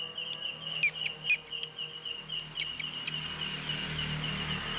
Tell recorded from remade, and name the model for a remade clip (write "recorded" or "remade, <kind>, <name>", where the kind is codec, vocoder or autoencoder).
recorded